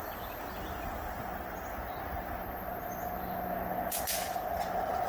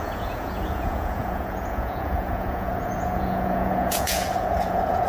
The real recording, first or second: first